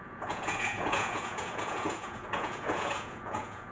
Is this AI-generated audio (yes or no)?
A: yes